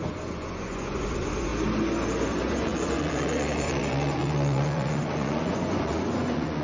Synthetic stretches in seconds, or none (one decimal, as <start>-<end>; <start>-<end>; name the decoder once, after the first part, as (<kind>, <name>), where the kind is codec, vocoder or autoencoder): 0.0-1.5 (vocoder, Vocos); 2.3-6.6